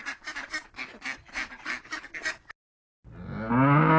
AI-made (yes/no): no